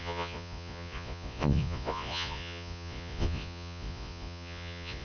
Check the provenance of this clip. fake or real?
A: fake